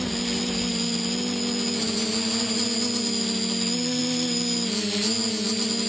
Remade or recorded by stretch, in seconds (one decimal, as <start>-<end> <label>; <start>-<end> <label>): 0.0-5.9 recorded